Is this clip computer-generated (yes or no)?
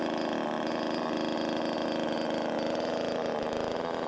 no